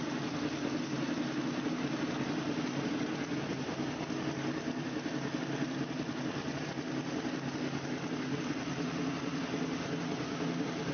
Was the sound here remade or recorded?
recorded